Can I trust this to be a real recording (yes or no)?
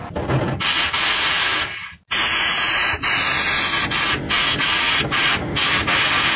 yes